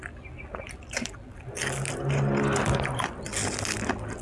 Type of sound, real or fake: real